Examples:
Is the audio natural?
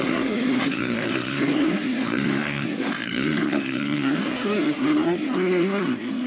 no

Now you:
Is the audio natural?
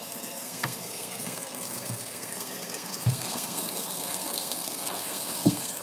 no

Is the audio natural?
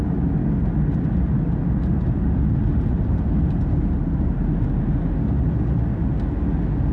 yes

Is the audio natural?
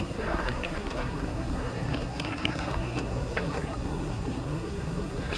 no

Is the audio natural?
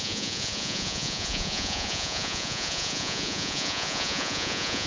no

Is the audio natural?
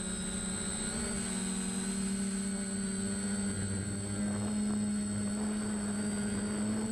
yes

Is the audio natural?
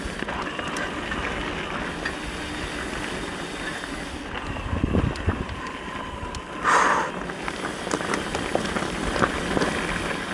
yes